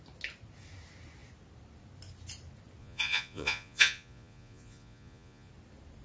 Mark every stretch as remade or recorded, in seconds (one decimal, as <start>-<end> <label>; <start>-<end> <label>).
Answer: 0.0-2.8 recorded; 2.8-5.5 remade; 5.5-6.0 recorded